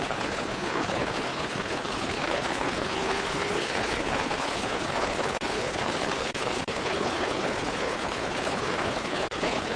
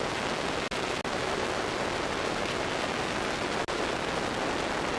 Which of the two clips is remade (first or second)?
first